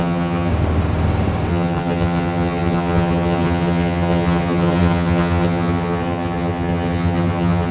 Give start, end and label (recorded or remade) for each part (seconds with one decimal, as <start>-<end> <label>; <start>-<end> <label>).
0.0-0.5 remade; 0.5-1.5 recorded; 1.5-7.7 remade

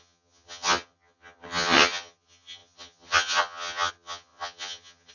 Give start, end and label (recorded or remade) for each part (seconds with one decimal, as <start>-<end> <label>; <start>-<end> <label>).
0.0-5.1 remade

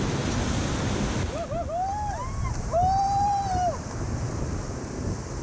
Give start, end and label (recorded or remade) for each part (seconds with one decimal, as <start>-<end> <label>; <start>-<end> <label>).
0.0-5.4 recorded